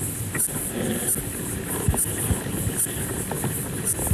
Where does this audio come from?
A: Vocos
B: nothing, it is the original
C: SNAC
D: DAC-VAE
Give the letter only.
B